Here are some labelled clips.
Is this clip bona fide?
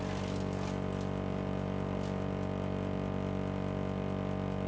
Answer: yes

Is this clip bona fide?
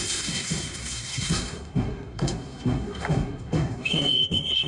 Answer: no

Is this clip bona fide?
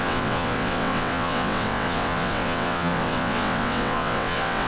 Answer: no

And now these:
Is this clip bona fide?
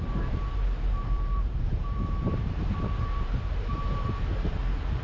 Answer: no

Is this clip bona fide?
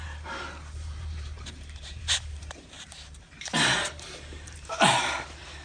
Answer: no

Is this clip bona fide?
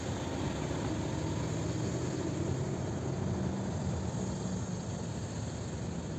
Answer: yes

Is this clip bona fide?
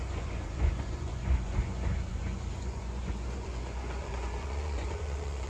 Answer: no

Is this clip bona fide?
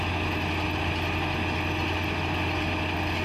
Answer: yes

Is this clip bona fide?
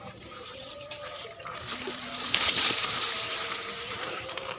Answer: no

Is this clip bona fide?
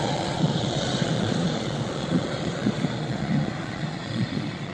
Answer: no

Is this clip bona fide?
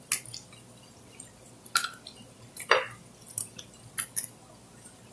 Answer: yes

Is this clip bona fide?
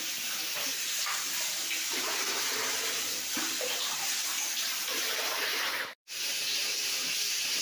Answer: no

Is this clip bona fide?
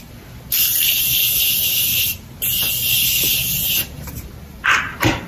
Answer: yes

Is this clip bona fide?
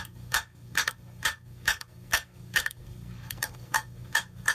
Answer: no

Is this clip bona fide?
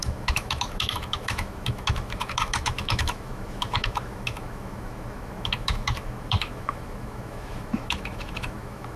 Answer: no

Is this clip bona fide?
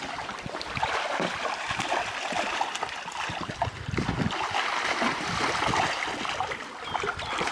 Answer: yes